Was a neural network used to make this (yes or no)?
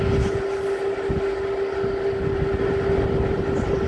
no